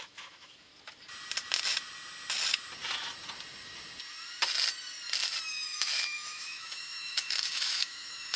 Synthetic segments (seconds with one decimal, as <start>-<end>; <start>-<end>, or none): 0.0-0.7; 5.5-8.4